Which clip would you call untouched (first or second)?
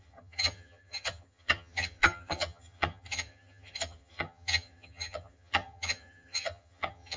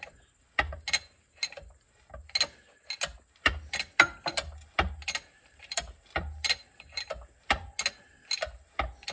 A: second